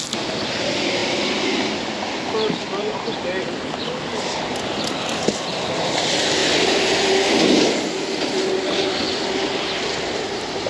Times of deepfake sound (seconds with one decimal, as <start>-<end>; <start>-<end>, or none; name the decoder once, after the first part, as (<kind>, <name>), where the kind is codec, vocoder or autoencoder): none